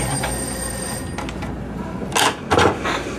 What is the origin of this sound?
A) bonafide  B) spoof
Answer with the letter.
A